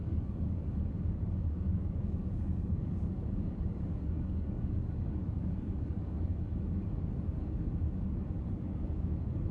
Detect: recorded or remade remade